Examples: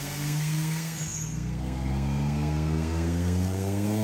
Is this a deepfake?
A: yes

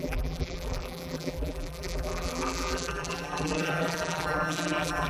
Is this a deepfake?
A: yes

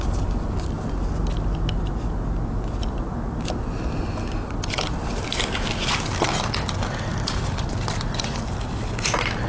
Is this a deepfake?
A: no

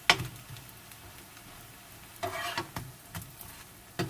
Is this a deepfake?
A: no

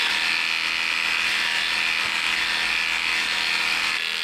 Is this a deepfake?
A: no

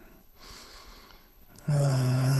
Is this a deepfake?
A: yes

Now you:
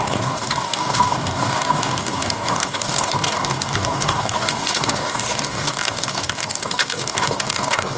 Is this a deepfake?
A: yes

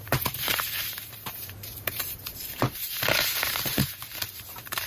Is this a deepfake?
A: yes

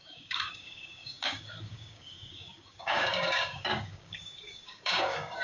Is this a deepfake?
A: yes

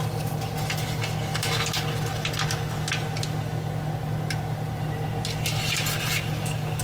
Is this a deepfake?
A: no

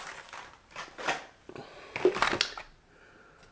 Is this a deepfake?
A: no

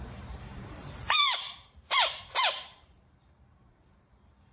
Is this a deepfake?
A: yes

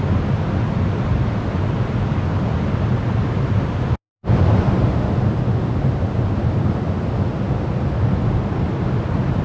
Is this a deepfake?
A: no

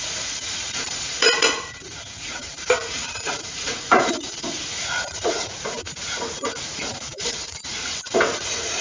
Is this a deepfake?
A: yes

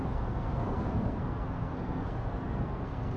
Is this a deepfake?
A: yes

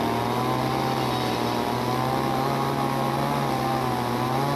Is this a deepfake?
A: no